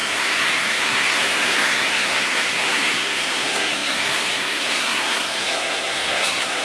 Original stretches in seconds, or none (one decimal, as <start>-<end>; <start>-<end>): none